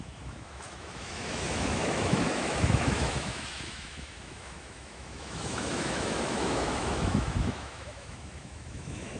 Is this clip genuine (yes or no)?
no